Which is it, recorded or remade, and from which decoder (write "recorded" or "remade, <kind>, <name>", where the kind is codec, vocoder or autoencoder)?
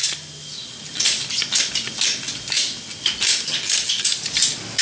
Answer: recorded